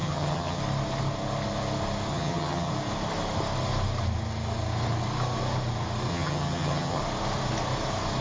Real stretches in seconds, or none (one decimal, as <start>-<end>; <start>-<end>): 0.6-2.1; 2.7-6.1; 7.0-8.2